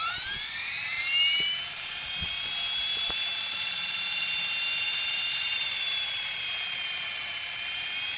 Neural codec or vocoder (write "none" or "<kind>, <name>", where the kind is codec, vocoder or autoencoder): vocoder, BigVGAN v2